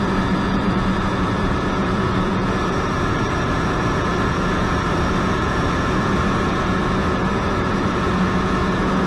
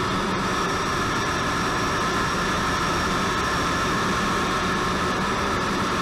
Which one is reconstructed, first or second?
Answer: first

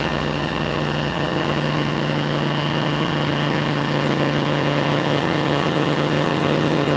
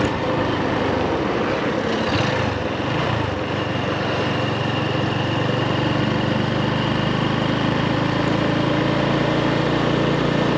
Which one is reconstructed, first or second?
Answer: first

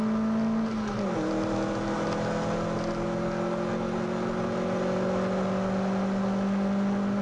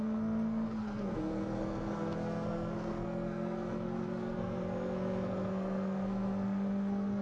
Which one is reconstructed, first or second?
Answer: second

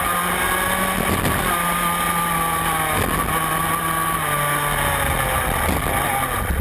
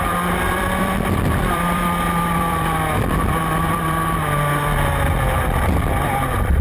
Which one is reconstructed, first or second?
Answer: second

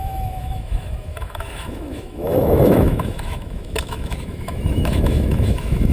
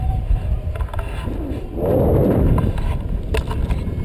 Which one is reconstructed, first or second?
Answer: first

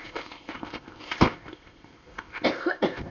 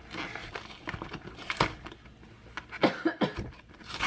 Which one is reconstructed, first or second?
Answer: first